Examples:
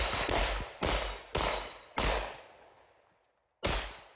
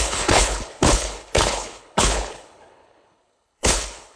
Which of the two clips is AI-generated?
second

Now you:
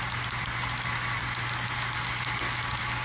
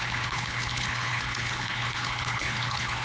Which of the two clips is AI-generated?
second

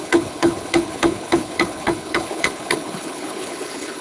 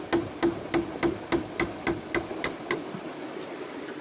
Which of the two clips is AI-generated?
first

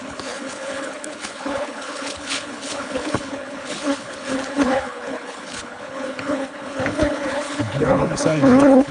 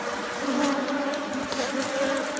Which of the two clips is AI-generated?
first